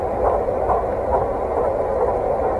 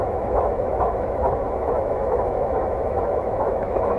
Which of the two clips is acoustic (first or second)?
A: first